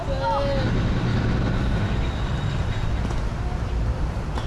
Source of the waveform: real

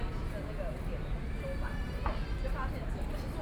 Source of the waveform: real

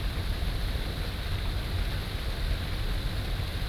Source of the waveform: real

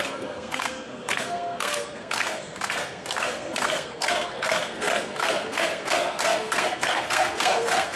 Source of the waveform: fake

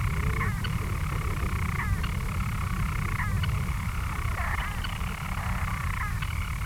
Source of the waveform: real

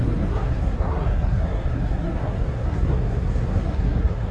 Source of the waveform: fake